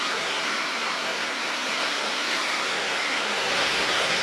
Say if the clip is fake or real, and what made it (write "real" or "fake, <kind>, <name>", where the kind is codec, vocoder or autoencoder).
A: fake, codec, SNAC